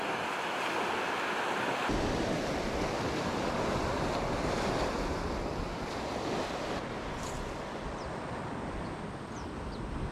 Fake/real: real